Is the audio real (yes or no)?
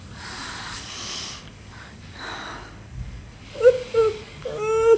no